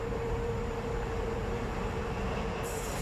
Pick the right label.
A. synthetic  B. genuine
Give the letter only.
A